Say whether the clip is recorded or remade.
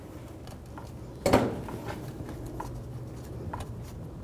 recorded